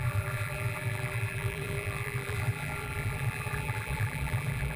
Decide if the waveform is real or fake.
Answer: fake